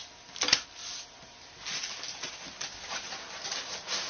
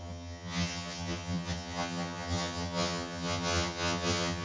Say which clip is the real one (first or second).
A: first